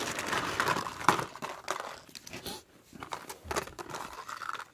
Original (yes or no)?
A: yes